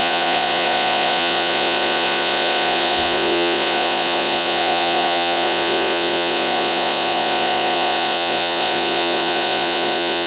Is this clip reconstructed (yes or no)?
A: yes